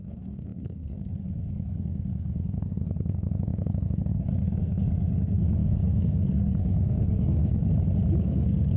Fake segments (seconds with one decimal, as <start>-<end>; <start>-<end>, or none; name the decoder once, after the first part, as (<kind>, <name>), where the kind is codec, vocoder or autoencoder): 0.0-7.6 (codec, SNAC); 8.2-8.8